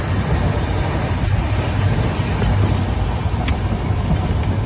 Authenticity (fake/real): real